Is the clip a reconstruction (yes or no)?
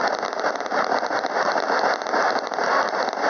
no